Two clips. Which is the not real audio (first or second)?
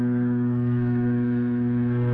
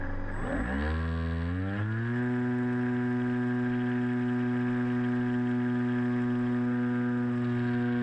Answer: first